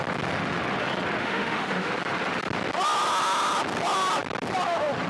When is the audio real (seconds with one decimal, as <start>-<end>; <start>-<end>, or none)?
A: 0.0-1.2; 1.9-5.1